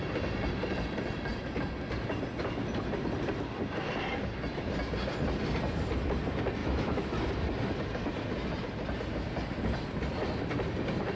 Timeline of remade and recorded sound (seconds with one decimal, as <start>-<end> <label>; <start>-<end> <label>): 0.0-6.6 recorded; 6.6-7.1 remade; 7.1-11.2 recorded